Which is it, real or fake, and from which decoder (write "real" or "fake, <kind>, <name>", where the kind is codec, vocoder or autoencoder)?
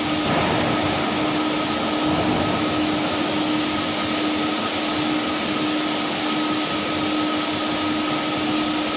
real